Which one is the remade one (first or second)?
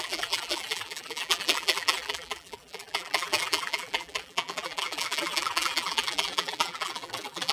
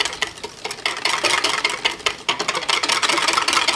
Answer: first